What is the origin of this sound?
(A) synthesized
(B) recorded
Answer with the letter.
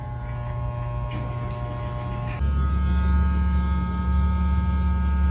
B